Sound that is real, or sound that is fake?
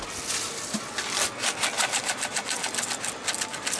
real